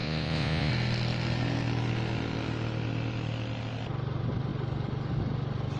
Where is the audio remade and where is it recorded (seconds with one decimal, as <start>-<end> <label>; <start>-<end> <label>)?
0.0-0.7 remade; 0.7-5.8 recorded